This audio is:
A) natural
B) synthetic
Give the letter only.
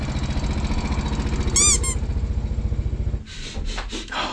A